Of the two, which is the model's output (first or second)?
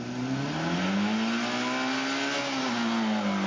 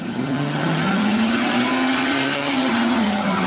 second